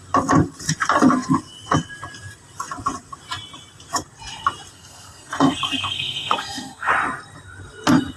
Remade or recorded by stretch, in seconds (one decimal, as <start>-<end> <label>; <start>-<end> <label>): 0.0-4.7 recorded; 4.7-6.9 remade; 6.9-8.2 recorded